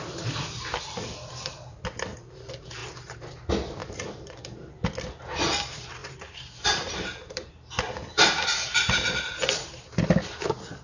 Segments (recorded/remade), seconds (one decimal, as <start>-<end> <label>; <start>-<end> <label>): 0.0-2.8 recorded; 2.8-3.4 remade; 3.4-3.8 recorded; 3.8-4.7 remade; 4.7-6.0 recorded; 6.0-7.5 remade; 7.5-10.8 recorded